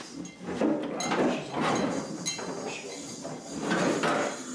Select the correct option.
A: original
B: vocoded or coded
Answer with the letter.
A